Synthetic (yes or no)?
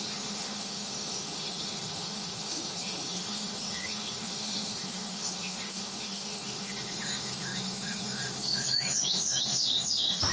yes